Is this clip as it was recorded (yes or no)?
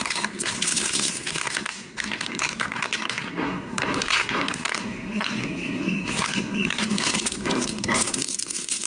no